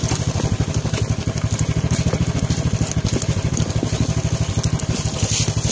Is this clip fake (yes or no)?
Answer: no